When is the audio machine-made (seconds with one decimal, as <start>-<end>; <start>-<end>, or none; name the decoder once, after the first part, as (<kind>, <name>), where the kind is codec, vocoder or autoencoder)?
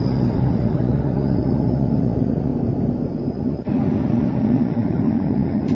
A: 0.0-2.5 (vocoder, Vocos); 3.3-5.7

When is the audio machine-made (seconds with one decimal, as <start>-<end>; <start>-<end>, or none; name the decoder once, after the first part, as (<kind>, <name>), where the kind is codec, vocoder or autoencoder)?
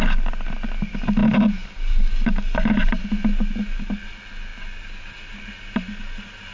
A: none